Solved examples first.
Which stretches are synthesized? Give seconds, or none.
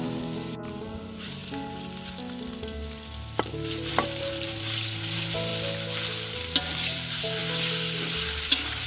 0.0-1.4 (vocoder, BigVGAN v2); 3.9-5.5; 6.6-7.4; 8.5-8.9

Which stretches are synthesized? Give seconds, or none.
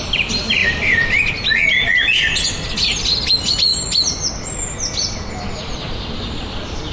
0.6-1.2 (vocoder, BigVGAN v2)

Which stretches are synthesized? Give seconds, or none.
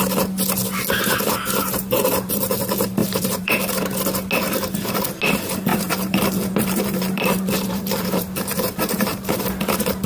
1.8-2.6 (vocoder, BigVGAN v2); 3.0-3.7; 5.7-9.4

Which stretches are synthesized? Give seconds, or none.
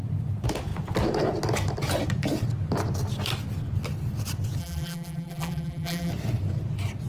4.6-6.1 (vocoder, BigVGAN v2)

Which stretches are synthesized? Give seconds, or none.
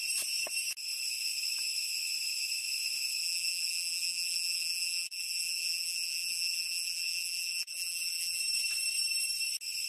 3.2-8.4 (vocoder, BigVGAN v2)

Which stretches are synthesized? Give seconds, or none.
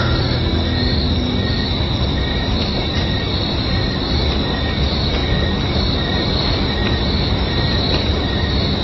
2.2-4.7 (vocoder, BigVGAN v2); 6.8-8.0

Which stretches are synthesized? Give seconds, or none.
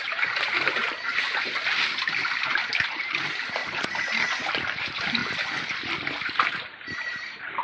0.0-0.8 (vocoder, BigVGAN v2); 2.8-5.2; 6.6-7.6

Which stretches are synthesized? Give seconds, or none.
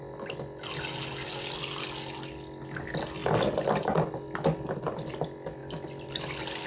5.6-6.1 (vocoder, BigVGAN v2)